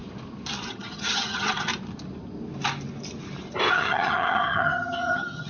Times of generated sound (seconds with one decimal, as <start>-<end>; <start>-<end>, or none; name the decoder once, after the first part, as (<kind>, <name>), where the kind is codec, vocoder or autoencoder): 0.7-1.7 (vocoder, HiFi-GAN); 3.7-5.5